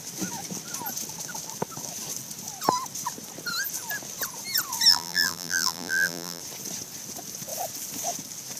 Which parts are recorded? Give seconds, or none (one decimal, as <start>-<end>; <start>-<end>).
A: 0.0-4.9; 6.4-8.6